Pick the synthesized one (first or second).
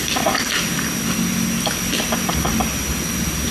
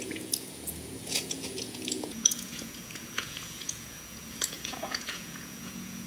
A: second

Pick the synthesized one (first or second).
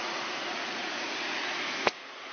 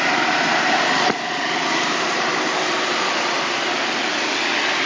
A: first